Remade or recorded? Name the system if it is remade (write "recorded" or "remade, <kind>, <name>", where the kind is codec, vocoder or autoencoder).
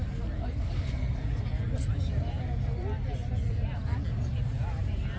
recorded